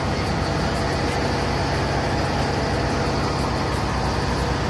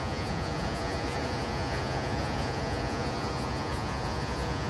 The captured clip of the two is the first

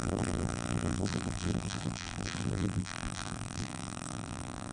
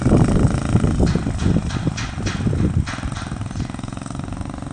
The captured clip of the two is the second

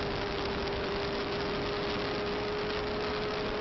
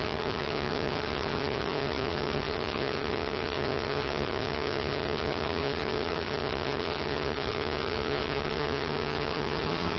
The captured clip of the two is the first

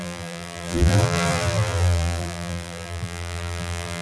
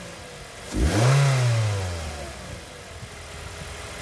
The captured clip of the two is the second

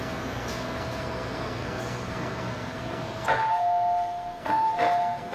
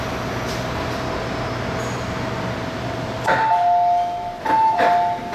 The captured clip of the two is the second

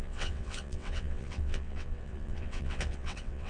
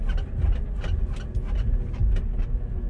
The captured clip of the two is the second